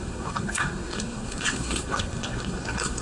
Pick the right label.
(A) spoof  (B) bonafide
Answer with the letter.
A